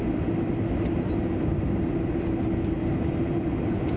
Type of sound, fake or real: real